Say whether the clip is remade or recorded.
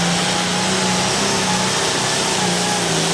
recorded